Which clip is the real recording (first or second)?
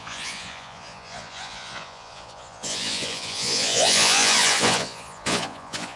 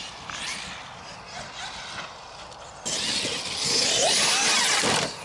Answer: second